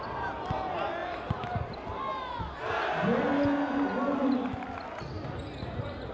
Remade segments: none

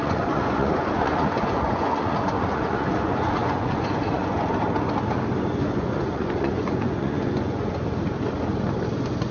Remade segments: 0.0-4.4 (vocoder, Vocos); 5.6-7.7